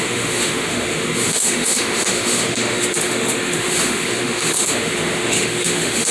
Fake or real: fake